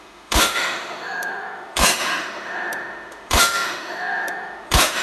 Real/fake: fake